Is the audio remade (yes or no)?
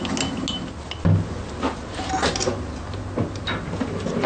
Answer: no